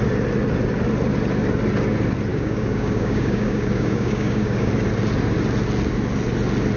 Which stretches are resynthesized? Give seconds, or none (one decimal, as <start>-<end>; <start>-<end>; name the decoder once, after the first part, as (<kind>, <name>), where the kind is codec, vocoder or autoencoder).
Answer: 2.3-4.7 (codec, DAC)